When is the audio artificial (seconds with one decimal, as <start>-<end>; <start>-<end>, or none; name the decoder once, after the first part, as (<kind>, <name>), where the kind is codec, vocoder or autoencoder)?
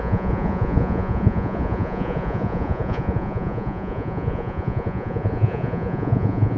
0.0-6.6 (vocoder, Vocos)